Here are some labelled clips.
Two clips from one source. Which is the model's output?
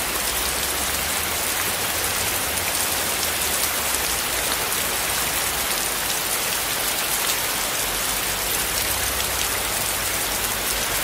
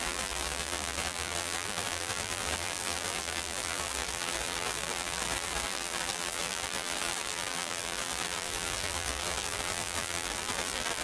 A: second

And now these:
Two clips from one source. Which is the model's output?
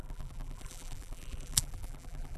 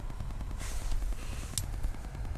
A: first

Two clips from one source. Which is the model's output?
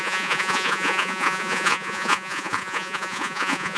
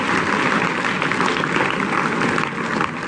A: first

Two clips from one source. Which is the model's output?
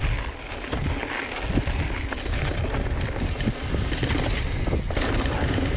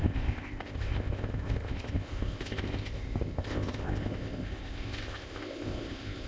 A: second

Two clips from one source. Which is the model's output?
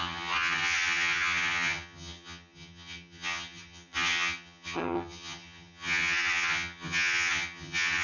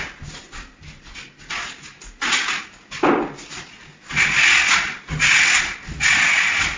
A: first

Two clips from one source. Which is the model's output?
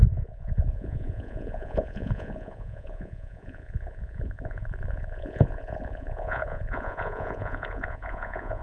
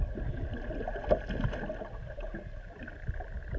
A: first